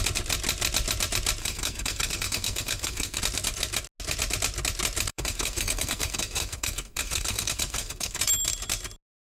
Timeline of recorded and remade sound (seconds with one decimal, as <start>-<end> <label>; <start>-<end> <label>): 0.0-1.4 recorded; 1.4-3.2 remade; 3.2-5.1 recorded; 5.1-8.2 remade; 8.2-9.3 recorded

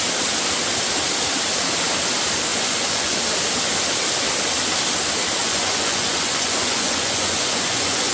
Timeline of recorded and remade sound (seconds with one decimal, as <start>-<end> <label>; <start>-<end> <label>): 0.0-2.5 recorded; 2.5-3.2 remade; 3.2-5.4 recorded; 5.4-8.1 remade

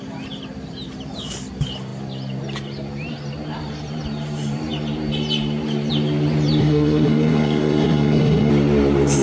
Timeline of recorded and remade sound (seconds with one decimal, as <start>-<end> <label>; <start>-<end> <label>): 0.0-6.6 recorded; 6.6-8.5 remade; 8.5-9.2 recorded

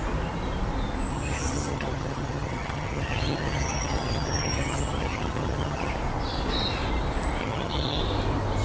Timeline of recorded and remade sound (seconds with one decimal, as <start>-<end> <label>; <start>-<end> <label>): 0.0-1.1 recorded; 1.1-5.9 remade; 5.9-7.4 recorded; 7.4-8.0 remade; 8.0-8.6 recorded

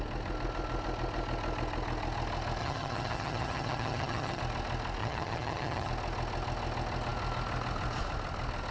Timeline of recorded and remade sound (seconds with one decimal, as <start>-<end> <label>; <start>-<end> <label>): 0.0-2.6 recorded; 2.6-4.4 remade; 4.4-5.0 recorded; 5.0-5.9 remade; 5.9-8.7 recorded

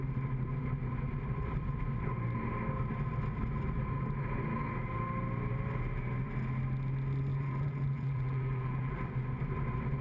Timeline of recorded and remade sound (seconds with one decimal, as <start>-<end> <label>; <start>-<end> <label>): 0.0-7.3 recorded; 7.3-9.1 remade; 9.1-10.0 recorded

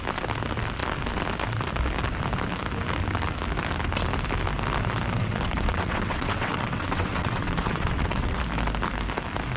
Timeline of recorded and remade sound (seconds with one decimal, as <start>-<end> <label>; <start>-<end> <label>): 0.0-5.2 recorded; 5.2-8.4 remade; 8.4-9.6 recorded